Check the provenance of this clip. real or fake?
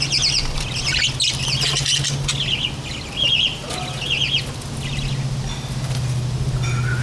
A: real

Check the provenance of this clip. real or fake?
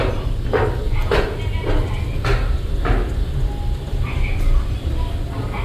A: real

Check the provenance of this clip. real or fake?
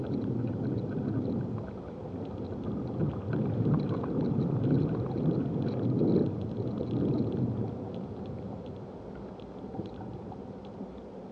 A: real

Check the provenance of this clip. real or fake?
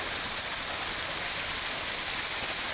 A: real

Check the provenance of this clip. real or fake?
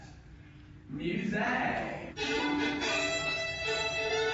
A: fake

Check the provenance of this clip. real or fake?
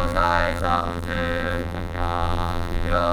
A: fake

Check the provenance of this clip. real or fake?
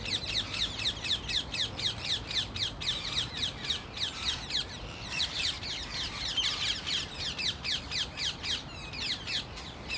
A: fake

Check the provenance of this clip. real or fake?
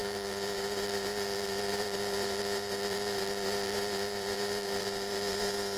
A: fake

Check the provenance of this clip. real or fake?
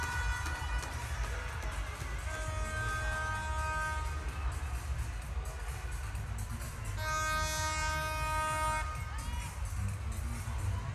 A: real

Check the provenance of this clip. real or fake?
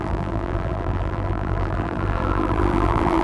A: fake